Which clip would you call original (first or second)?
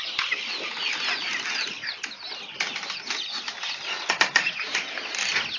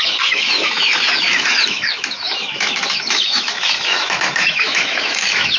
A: first